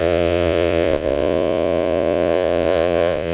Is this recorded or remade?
remade